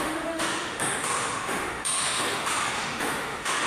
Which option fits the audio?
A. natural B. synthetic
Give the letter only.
B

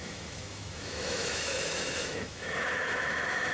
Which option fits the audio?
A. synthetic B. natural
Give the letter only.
A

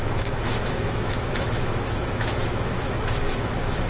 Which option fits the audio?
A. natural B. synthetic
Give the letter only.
B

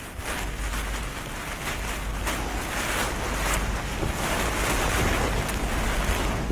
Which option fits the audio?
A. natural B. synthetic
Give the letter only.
A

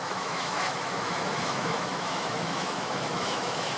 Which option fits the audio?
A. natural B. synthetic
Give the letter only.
B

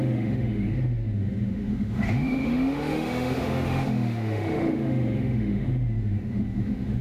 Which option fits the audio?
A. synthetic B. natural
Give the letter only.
A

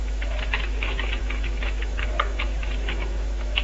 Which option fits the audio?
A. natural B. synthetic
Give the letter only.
B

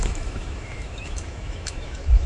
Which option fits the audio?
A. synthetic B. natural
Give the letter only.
A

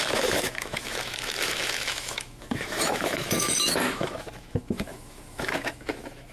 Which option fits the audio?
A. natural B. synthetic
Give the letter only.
B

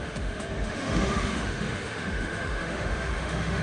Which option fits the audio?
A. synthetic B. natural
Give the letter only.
A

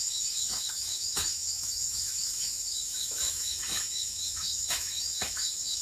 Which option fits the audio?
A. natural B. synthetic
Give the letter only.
B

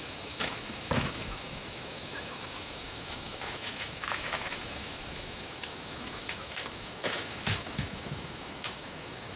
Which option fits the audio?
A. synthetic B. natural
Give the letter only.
A